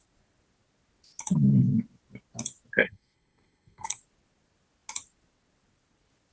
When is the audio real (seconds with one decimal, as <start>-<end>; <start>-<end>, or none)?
0.0-2.8; 4.0-6.3